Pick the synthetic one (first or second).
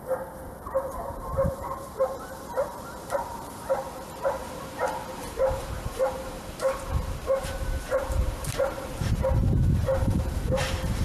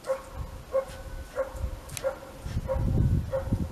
first